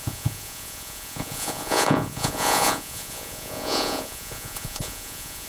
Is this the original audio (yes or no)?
no